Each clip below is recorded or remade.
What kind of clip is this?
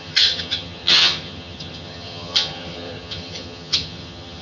remade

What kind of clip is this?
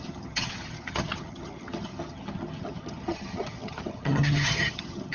remade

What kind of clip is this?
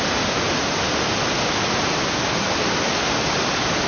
recorded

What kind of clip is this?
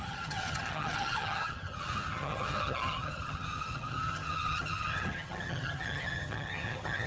remade